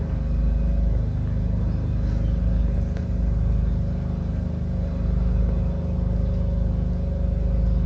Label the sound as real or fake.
real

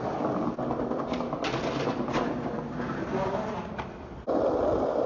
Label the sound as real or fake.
real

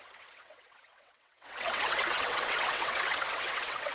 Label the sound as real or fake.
fake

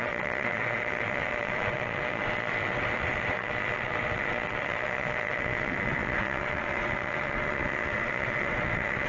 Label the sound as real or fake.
fake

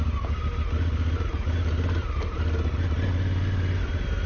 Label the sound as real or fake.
real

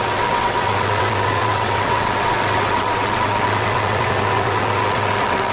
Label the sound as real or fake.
fake